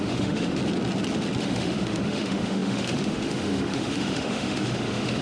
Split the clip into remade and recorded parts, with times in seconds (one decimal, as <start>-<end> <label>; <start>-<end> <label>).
0.0-0.6 remade; 0.6-1.4 recorded; 1.4-5.2 remade